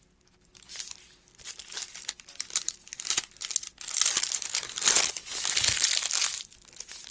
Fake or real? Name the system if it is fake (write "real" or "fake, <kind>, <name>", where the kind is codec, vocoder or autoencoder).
real